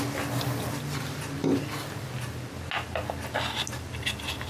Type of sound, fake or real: real